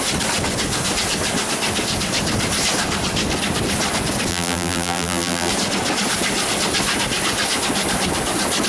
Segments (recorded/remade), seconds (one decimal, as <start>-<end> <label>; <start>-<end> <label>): 0.0-4.3 recorded; 4.3-5.5 remade; 5.5-8.7 recorded